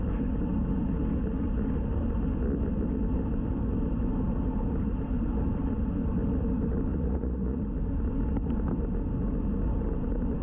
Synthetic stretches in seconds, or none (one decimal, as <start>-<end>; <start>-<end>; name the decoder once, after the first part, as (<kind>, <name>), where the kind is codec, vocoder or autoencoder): 6.9-7.6 (vocoder, Vocos)

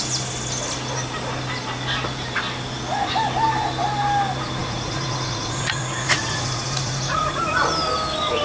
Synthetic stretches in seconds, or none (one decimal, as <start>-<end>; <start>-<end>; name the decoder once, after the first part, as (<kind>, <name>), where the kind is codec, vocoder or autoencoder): 4.6-7.7 (vocoder, Vocos)